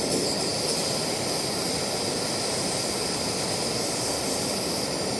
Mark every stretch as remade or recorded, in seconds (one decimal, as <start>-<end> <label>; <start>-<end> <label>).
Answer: 0.0-5.2 recorded